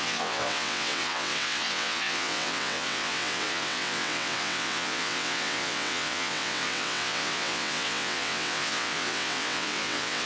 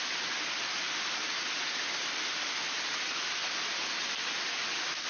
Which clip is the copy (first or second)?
first